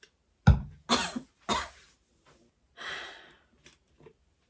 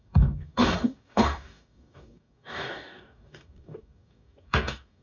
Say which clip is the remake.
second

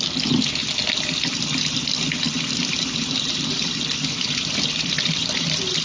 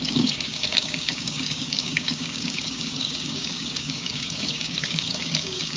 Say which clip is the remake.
second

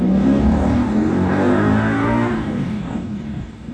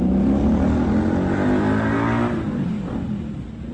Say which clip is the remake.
first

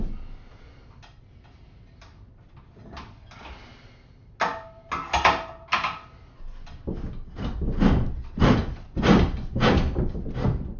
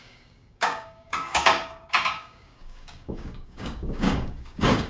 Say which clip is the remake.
second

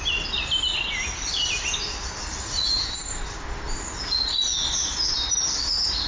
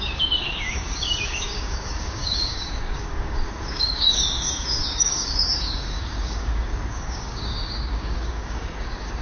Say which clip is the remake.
second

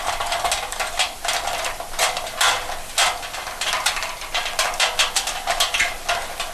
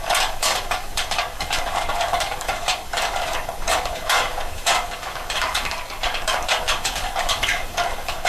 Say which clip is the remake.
second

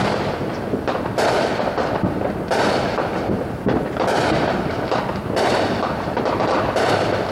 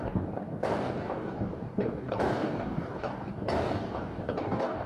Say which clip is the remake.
second